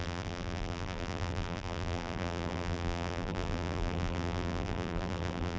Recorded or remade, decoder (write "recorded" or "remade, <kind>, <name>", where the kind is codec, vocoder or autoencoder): remade, vocoder, BigVGAN v2